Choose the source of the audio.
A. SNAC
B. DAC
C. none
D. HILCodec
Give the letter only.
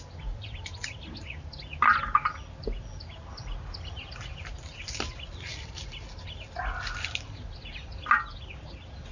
C